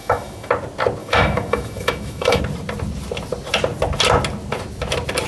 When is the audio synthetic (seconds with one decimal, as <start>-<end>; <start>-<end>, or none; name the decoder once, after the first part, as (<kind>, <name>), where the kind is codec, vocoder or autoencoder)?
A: 0.0-0.5 (autoencoder, DAC-VAE); 1.0-2.4